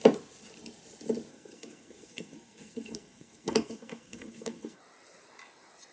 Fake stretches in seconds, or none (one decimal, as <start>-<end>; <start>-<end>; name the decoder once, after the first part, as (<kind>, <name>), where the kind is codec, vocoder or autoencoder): 1.3-4.8 (codec, SNAC)